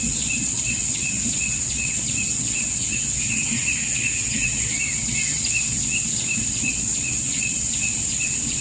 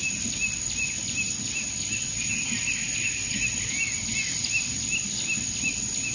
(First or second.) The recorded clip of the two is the second